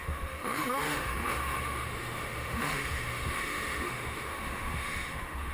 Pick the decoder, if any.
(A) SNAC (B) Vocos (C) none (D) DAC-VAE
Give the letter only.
D